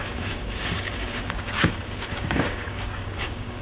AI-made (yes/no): yes